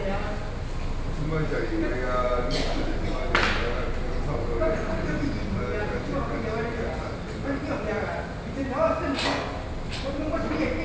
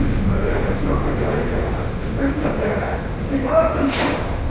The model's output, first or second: second